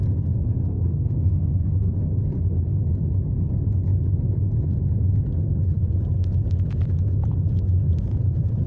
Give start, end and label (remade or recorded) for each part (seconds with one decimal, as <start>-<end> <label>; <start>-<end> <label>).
0.0-0.6 recorded; 0.6-1.9 remade; 1.9-8.7 recorded